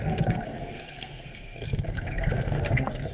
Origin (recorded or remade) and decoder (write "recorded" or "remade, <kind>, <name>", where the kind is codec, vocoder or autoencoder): remade, codec, SNAC